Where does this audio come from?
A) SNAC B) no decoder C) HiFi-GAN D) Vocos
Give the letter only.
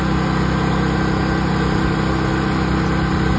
B